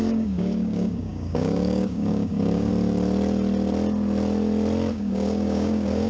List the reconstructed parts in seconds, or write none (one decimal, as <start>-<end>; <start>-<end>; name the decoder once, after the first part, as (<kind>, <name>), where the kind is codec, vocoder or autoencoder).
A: 0.0-2.7 (codec, DAC); 4.9-6.1